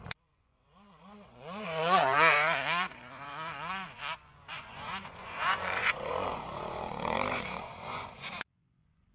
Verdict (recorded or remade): remade